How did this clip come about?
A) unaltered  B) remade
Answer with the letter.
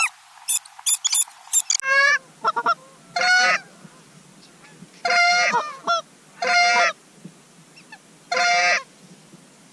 A